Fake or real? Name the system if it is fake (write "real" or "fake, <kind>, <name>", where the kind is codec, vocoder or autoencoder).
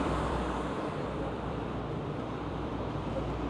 fake, vocoder, BigVGAN v2